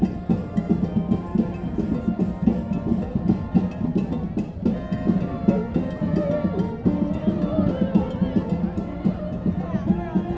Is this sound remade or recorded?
recorded